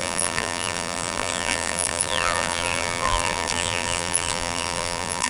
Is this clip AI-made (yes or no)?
yes